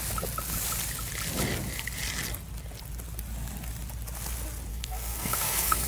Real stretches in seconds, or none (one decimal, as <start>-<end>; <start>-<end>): 0.0-4.7